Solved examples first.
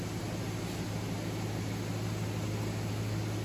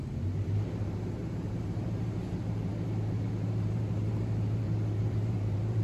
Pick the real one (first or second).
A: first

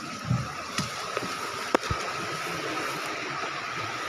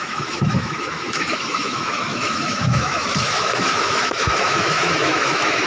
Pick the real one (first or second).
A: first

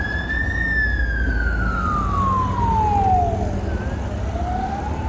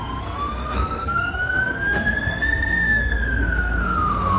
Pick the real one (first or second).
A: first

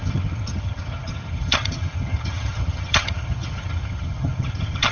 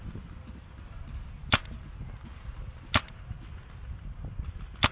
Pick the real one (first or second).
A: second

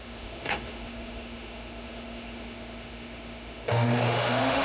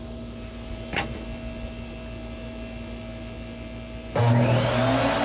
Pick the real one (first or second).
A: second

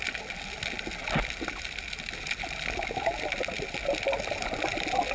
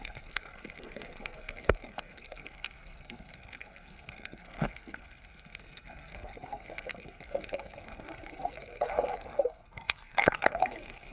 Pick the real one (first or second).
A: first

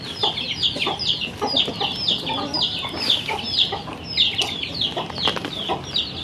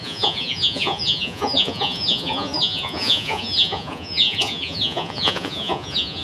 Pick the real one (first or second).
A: first